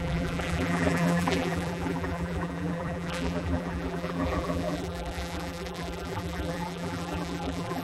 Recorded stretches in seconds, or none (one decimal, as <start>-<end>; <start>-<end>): none